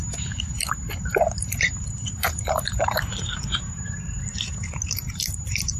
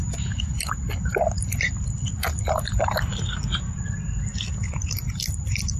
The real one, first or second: second